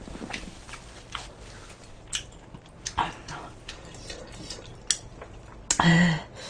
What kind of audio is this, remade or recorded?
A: recorded